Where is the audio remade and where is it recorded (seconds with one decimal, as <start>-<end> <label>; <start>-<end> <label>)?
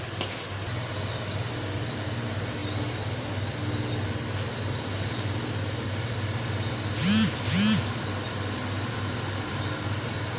0.0-10.4 recorded